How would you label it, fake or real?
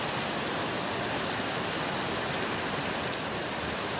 real